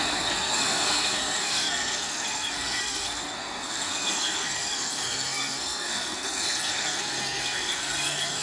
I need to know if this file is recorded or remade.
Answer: remade